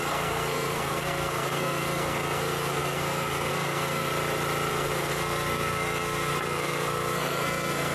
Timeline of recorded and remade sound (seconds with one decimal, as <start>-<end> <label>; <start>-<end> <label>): 0.0-4.1 remade; 4.1-4.7 recorded; 4.7-7.9 remade